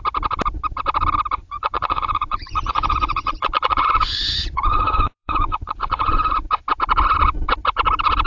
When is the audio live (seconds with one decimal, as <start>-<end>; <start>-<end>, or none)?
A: 0.0-1.4; 6.4-8.3